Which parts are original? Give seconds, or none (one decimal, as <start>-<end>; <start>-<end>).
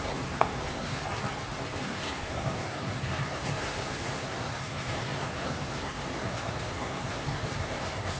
1.0-1.8